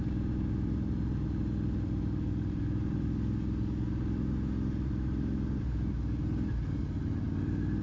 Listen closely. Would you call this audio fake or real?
real